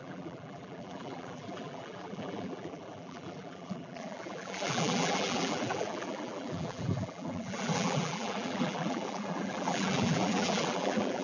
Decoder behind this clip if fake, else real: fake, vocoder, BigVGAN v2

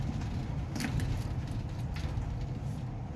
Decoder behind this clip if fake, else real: real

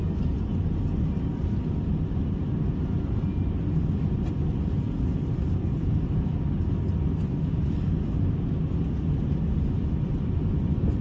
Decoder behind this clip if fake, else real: real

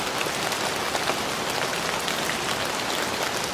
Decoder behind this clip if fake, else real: real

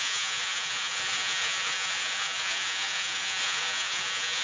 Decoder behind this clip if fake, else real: fake, vocoder, Vocos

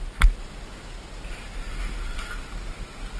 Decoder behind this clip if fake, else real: real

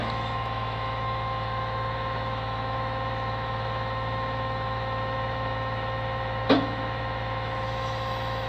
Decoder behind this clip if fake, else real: fake, autoencoder, DAC-VAE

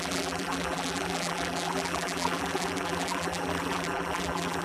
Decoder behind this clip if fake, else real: fake, vocoder, BigVGAN v2